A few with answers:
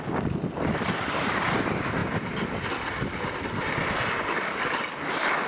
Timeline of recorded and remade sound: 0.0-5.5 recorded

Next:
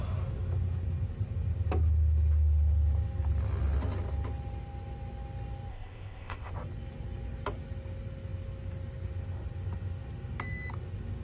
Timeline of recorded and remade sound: 0.0-5.7 recorded; 5.7-6.5 remade; 6.5-11.2 recorded

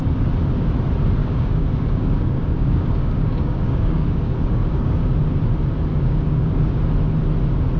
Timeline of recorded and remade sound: 0.0-1.2 recorded; 1.2-5.0 remade; 5.0-5.9 recorded; 5.9-6.8 remade; 6.8-7.8 recorded